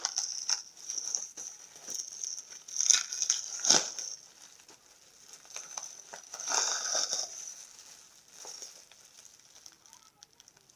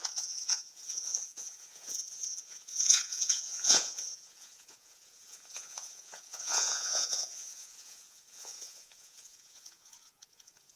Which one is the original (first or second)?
first